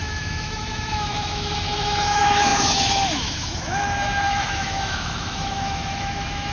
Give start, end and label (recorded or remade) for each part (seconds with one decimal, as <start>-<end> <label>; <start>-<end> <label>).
0.0-6.5 remade